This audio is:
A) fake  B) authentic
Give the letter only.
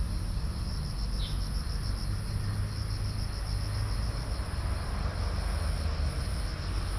B